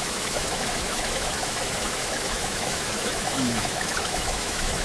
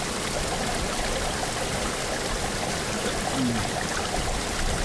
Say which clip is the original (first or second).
second